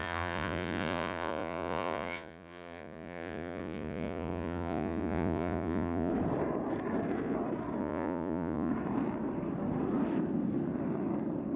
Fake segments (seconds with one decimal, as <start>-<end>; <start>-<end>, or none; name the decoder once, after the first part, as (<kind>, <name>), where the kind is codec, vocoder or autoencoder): 0.0-6.1 (vocoder, Vocos); 7.8-8.7